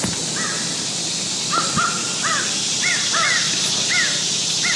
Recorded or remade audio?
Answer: recorded